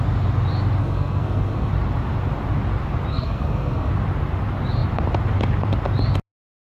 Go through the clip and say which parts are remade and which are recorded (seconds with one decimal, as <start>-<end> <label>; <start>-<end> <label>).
0.0-0.8 recorded; 0.8-1.7 remade; 1.7-3.1 recorded; 3.1-3.9 remade; 3.9-6.6 recorded